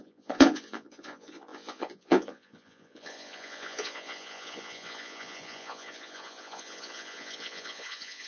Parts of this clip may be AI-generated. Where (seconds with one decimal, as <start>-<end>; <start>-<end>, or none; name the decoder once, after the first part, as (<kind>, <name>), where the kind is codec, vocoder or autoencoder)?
0.0-8.3 (vocoder, Vocos)

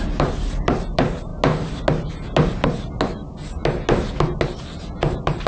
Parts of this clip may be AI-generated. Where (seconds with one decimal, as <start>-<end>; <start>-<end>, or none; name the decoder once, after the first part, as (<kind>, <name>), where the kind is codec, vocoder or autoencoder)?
0.0-1.3 (vocoder, BigVGAN v2); 4.6-5.5

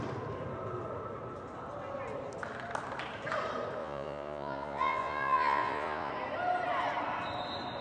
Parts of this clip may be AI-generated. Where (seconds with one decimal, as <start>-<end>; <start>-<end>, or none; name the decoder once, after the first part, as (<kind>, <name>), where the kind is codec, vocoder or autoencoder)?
3.8-6.1 (vocoder, Vocos)

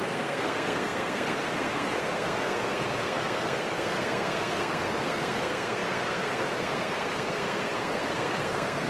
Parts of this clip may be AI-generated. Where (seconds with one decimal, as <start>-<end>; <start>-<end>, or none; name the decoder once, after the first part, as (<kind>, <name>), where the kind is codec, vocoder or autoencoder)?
0.0-8.9 (codec, SNAC)

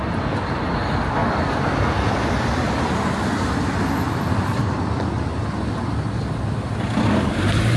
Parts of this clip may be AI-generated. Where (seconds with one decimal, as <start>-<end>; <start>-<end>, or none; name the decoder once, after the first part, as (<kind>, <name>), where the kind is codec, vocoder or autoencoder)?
none

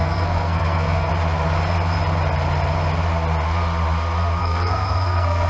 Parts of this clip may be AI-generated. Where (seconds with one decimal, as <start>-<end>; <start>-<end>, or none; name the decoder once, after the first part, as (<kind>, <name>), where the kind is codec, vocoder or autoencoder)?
0.0-1.1 (codec, SNAC); 4.4-5.5

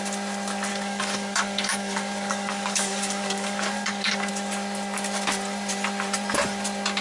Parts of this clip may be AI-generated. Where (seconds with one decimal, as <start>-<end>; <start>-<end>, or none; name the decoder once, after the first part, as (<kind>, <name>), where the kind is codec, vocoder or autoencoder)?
0.7-4.3 (codec, DAC)